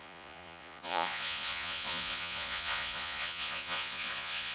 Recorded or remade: remade